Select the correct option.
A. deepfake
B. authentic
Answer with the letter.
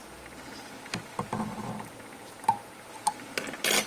B